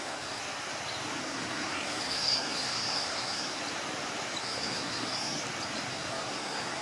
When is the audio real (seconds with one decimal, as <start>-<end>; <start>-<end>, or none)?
0.4-1.2; 3.6-4.4; 5.4-5.9